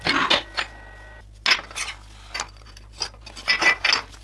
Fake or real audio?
real